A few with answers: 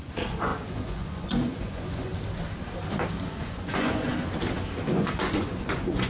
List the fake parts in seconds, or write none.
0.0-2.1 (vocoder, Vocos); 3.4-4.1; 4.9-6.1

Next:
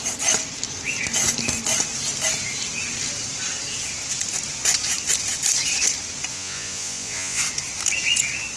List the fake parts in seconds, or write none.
6.3-7.4 (vocoder, Vocos)